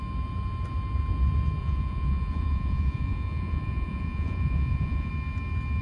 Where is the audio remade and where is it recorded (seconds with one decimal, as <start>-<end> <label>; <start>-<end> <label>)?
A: 0.0-1.6 recorded; 1.6-5.1 remade; 5.1-5.8 recorded

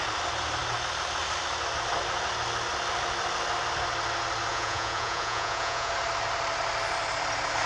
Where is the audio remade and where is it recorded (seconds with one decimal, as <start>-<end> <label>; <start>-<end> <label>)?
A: 0.0-4.5 recorded; 4.5-5.9 remade; 5.9-7.7 recorded

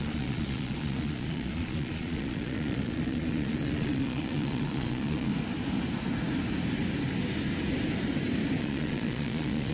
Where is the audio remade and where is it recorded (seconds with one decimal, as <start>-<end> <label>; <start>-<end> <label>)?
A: 0.0-5.3 remade; 5.3-8.6 recorded; 8.6-9.7 remade

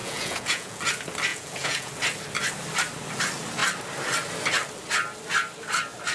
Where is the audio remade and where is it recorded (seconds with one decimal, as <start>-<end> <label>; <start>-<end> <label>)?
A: 0.0-0.8 remade; 0.8-1.3 recorded; 1.3-1.9 remade; 1.9-6.1 recorded

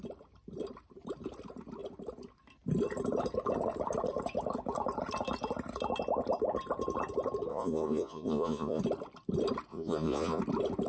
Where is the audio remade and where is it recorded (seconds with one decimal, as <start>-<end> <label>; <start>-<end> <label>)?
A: 0.0-7.5 recorded; 7.5-8.8 remade; 8.8-9.7 recorded; 9.7-10.4 remade; 10.4-10.9 recorded

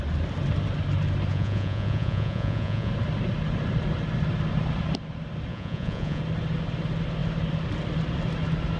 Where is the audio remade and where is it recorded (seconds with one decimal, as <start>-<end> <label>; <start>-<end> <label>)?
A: 0.0-1.3 recorded; 1.3-2.9 remade; 2.9-5.5 recorded; 5.5-6.2 remade; 6.2-8.8 recorded